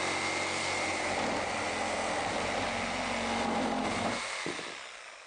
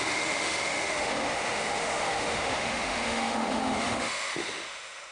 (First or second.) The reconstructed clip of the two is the second